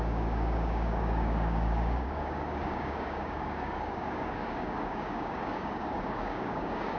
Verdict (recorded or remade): remade